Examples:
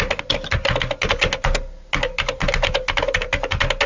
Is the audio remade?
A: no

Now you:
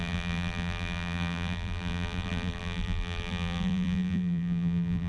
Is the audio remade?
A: yes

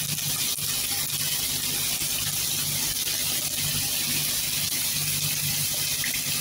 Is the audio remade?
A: no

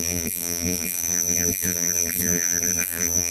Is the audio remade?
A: yes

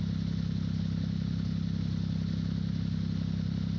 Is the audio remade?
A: no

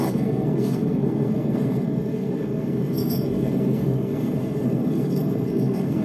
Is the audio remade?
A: yes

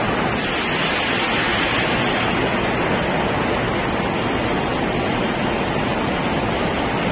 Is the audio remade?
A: no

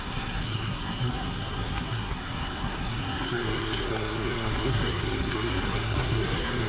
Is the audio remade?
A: yes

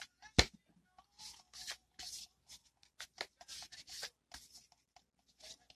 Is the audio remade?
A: no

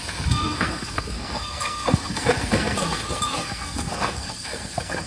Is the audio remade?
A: yes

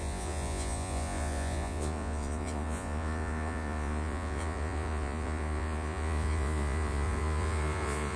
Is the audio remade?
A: yes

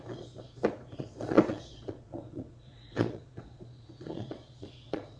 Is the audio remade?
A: yes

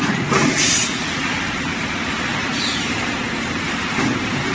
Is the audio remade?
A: yes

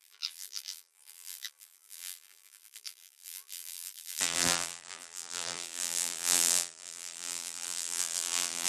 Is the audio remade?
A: yes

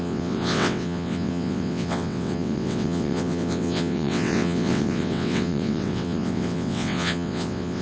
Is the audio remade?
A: yes